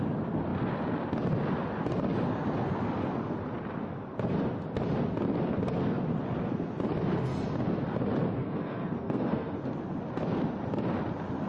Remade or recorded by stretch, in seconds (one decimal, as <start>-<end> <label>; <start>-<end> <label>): 0.0-8.4 recorded; 8.4-9.6 remade; 9.6-11.5 recorded